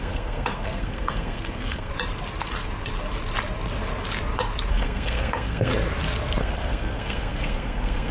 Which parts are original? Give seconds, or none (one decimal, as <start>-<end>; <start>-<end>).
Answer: 1.9-4.7; 5.7-6.4